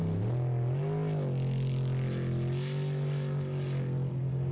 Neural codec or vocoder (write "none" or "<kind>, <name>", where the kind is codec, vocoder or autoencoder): none